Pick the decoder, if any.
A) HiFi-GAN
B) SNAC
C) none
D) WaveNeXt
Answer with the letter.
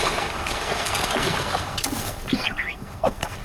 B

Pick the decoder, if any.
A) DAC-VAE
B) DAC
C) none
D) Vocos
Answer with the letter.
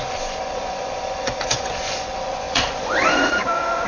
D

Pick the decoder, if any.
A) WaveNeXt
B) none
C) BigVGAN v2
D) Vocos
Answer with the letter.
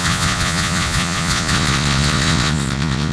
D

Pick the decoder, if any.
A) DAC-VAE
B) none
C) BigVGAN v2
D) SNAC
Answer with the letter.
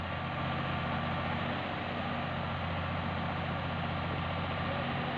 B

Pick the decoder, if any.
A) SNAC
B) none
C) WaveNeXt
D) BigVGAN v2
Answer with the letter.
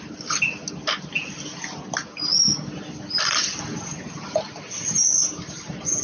B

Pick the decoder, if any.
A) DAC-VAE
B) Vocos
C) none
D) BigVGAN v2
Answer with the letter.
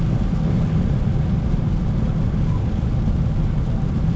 C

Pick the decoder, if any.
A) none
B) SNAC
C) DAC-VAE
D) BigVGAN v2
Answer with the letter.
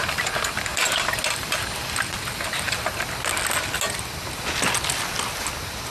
A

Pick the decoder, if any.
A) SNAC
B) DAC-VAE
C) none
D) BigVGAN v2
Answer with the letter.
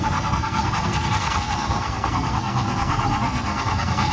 A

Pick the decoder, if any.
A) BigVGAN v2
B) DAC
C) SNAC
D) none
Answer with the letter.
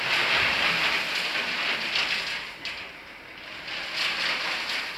D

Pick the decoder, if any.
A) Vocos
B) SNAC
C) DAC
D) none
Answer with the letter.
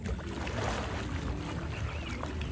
D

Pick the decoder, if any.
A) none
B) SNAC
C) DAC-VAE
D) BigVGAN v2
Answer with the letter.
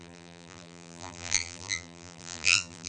D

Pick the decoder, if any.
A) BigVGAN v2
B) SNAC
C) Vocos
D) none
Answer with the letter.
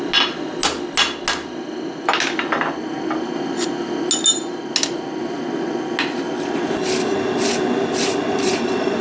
D